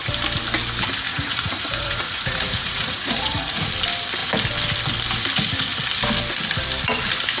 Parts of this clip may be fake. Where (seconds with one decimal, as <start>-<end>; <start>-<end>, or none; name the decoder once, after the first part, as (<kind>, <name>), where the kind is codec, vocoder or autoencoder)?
1.1-3.7 (vocoder, Vocos)

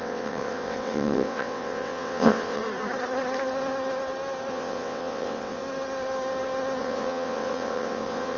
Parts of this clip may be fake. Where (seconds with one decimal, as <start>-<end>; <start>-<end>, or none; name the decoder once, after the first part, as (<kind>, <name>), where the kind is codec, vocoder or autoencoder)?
0.0-2.6 (vocoder, WaveNeXt); 4.5-5.6; 6.8-8.4

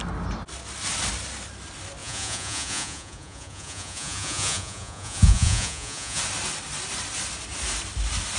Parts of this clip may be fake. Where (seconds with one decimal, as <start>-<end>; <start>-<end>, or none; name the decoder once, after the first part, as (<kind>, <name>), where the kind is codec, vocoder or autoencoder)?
2.0-6.2 (vocoder, Vocos)

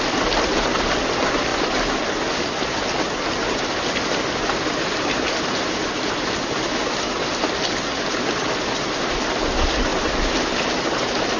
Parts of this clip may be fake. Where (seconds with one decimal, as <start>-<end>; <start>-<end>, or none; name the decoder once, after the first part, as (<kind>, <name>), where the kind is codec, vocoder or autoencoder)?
none

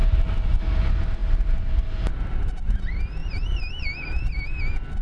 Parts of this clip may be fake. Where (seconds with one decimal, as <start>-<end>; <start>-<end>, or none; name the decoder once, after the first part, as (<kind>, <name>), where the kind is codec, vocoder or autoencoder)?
0.0-0.6 (vocoder, BigVGAN v2); 1.2-2.2; 3.2-4.2

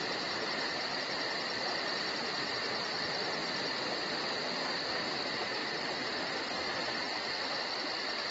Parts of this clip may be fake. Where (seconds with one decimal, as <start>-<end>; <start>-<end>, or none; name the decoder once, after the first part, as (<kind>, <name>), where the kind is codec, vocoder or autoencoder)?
0.9-1.6 (vocoder, BigVGAN v2)

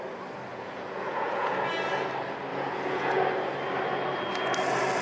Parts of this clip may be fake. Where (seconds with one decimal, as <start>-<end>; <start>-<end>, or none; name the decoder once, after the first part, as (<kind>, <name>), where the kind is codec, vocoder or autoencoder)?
0.5-1.7 (vocoder, Vocos); 2.5-3.2

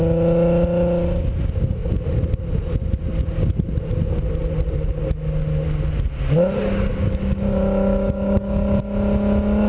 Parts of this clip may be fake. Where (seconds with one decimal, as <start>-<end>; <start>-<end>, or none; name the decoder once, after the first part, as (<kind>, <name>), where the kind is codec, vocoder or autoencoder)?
6.9-8.8 (codec, DAC)